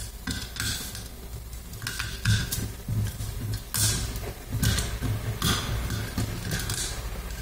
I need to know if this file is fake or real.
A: real